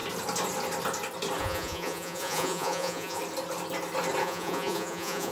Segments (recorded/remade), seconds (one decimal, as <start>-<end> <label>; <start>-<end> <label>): 0.0-1.4 recorded; 1.4-3.2 remade; 3.2-4.2 recorded; 4.2-5.3 remade